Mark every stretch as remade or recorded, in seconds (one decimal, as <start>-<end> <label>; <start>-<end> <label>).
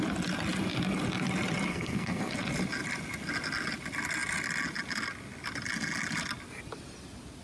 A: 0.0-1.7 recorded; 1.7-2.3 remade; 2.3-7.4 recorded